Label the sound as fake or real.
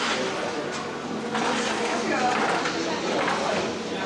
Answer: real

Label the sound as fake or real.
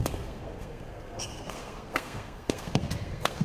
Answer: fake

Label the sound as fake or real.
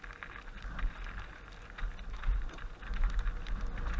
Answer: real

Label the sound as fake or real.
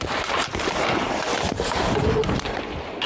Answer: fake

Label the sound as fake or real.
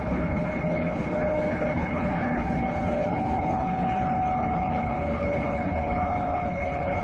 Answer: fake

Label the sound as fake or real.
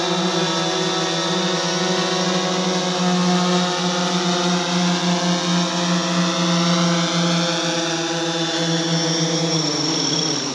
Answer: real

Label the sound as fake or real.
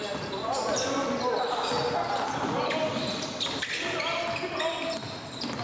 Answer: real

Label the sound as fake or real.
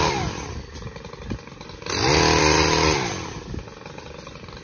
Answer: real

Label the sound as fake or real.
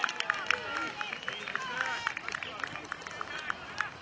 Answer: real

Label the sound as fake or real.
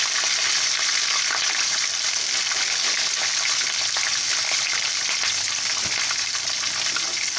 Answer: real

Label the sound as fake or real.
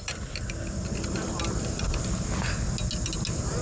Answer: real